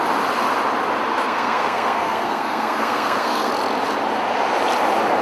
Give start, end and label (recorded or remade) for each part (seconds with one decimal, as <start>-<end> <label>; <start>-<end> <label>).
0.0-1.1 recorded; 1.1-3.5 remade; 3.5-5.2 recorded